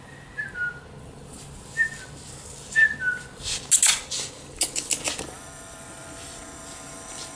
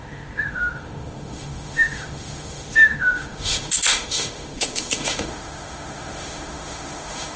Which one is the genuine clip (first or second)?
first